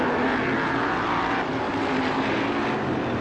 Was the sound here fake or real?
real